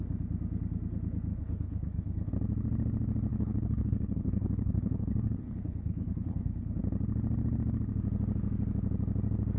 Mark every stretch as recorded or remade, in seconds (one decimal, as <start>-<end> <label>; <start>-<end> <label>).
0.0-1.3 recorded; 1.3-2.3 remade; 2.3-3.3 recorded; 3.3-6.8 remade; 6.8-9.6 recorded